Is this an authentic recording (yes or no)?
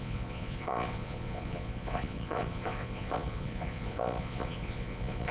no